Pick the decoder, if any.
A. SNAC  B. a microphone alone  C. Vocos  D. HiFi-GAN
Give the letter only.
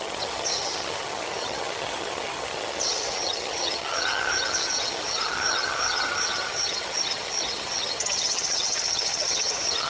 D